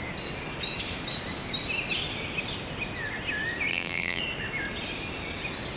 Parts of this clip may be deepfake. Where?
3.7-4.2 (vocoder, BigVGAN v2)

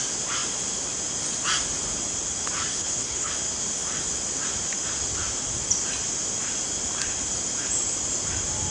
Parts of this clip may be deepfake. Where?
2.7-3.3 (codec, HILCodec)

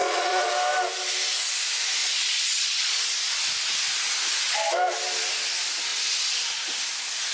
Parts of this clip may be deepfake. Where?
0.0-0.5 (vocoder, Vocos); 2.0-3.3